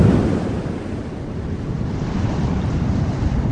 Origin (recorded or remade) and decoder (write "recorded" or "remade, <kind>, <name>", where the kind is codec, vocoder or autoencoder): remade, vocoder, BigVGAN v2